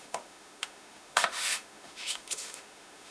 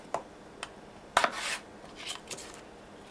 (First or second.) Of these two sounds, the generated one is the first